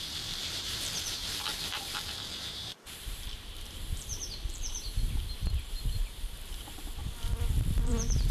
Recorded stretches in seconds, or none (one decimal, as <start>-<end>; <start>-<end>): 7.0-7.8